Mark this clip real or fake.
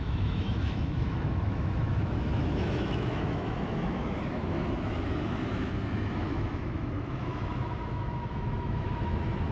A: fake